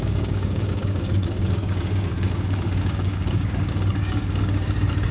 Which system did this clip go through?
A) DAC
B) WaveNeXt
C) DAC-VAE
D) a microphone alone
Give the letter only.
A